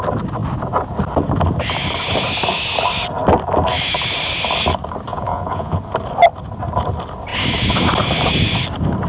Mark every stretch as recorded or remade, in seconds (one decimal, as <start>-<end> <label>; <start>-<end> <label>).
0.0-5.1 recorded; 5.1-5.8 remade; 5.8-9.1 recorded